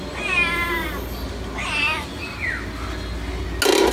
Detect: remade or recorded recorded